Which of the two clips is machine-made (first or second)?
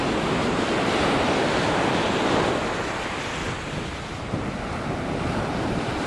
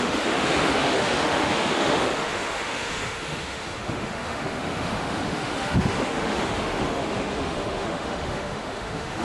second